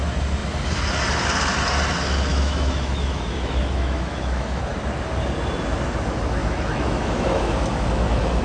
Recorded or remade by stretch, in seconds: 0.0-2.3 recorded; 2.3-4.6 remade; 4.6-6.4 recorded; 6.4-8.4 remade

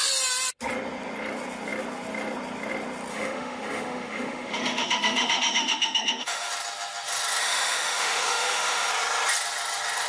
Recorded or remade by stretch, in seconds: 0.0-3.1 recorded; 3.1-6.5 remade; 6.5-7.4 recorded; 7.4-8.9 remade; 8.9-10.1 recorded